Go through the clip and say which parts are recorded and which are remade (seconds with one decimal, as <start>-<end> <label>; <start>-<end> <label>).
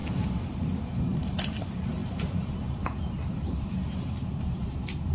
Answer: 0.0-2.0 recorded; 2.0-4.3 remade; 4.3-5.1 recorded